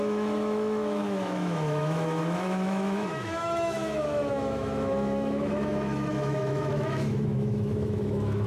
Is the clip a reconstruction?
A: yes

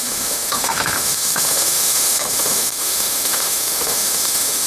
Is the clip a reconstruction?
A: yes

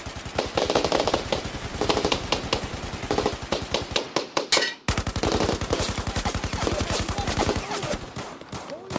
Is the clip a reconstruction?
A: no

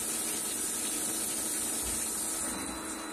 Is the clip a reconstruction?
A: no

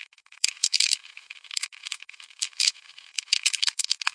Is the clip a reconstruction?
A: yes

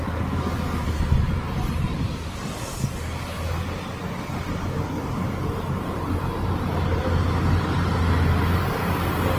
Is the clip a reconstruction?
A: no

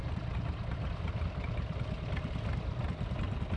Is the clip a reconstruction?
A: no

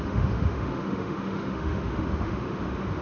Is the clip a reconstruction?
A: yes